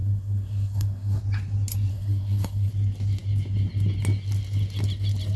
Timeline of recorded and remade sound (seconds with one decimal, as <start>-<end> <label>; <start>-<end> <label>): 0.0-1.2 remade; 1.2-1.9 recorded; 1.9-2.7 remade; 2.7-5.4 recorded